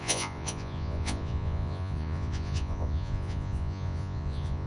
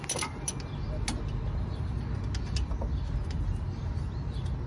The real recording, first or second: second